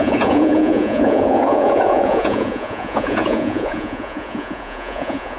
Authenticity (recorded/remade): remade